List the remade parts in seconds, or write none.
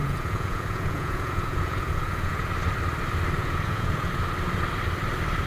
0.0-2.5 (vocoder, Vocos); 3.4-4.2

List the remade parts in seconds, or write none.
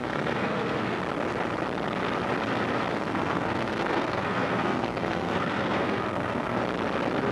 0.0-1.0 (codec, SNAC); 2.9-6.6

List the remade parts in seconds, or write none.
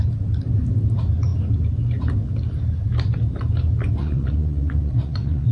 4.0-5.5 (vocoder, Vocos)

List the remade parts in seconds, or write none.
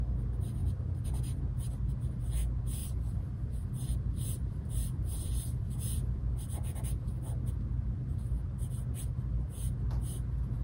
0.6-1.4 (vocoder, BigVGAN v2); 2.8-6.3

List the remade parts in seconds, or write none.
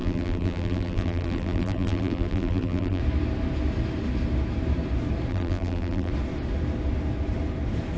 0.0-3.0 (vocoder, BigVGAN v2); 5.3-6.1